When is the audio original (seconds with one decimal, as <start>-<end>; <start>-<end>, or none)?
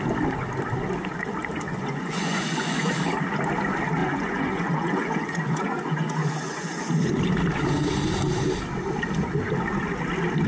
0.0-1.7; 2.9-4.0; 6.9-10.5